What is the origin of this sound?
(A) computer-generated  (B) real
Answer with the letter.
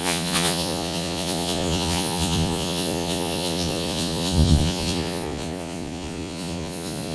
A